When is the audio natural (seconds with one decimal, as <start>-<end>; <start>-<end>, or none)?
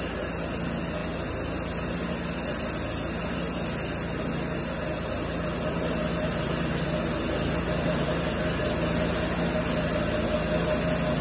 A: 0.0-11.2